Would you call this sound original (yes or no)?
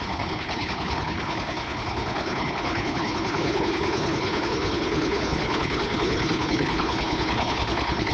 no